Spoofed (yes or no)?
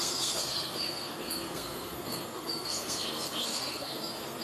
yes